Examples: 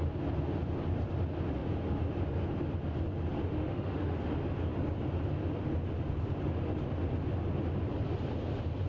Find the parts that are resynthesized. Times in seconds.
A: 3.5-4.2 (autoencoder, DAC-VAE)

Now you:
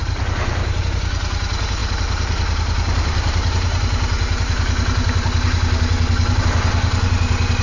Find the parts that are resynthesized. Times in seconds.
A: 0.0-0.8 (vocoder, BigVGAN v2); 1.8-6.4

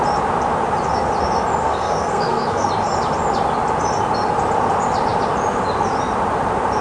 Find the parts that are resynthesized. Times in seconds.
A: 1.6-2.7 (codec, SNAC)